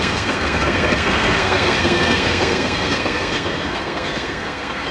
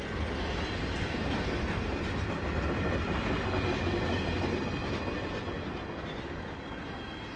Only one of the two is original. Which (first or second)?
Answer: second